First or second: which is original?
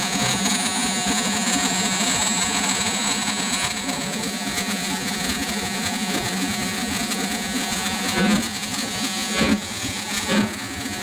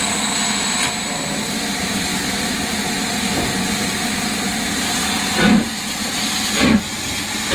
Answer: second